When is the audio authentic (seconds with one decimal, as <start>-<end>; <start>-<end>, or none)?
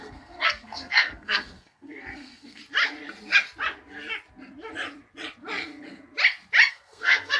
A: 2.6-6.7